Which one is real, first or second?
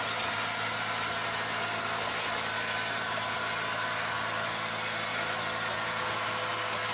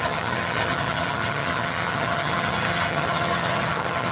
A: first